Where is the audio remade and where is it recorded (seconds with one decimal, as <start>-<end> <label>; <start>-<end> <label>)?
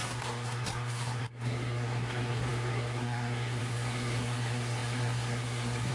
0.0-5.9 remade